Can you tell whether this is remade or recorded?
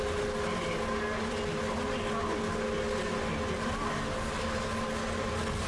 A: recorded